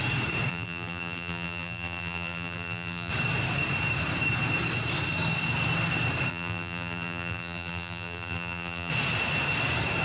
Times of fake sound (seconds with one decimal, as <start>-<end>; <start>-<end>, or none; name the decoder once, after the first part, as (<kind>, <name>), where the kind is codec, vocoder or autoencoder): 0.5-3.1 (vocoder, BigVGAN v2); 6.3-8.9